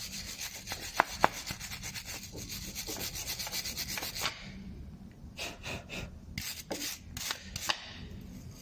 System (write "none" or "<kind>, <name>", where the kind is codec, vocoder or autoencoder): none